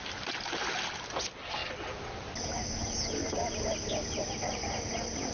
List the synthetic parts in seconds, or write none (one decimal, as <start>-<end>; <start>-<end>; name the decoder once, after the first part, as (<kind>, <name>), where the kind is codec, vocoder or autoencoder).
none